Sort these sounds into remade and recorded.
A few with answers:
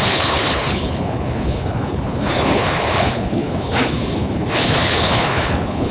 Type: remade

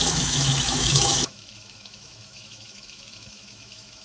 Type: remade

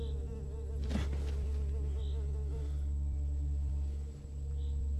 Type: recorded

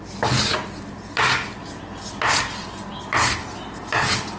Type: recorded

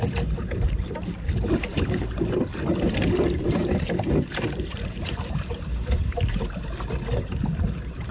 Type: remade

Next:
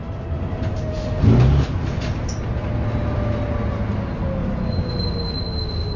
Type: recorded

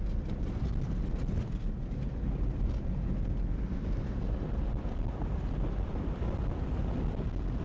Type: recorded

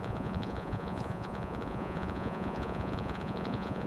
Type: remade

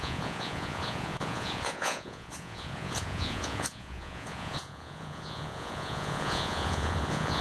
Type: remade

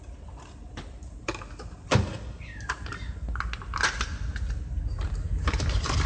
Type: recorded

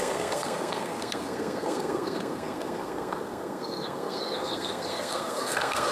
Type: remade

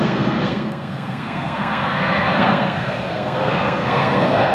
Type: remade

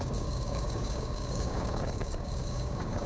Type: remade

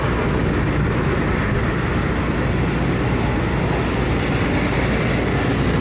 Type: recorded